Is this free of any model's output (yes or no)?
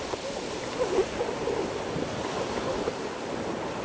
yes